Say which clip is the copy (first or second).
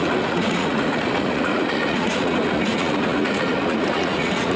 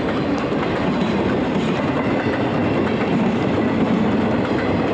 first